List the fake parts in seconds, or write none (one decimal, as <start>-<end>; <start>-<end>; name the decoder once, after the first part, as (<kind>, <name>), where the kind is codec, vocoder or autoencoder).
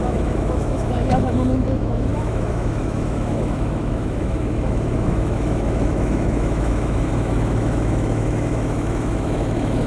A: 0.0-9.9 (autoencoder, DAC-VAE)